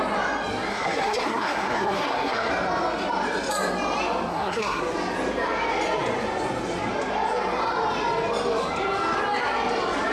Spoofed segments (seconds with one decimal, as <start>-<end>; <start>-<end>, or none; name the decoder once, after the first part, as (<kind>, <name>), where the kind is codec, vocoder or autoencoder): 0.7-2.5 (codec, SNAC); 4.3-4.8